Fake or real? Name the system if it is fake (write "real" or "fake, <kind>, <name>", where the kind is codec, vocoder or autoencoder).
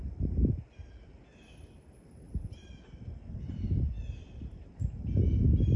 real